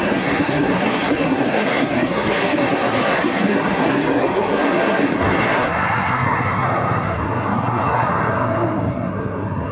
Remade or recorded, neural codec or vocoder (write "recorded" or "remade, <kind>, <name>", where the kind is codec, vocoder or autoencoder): remade, codec, SNAC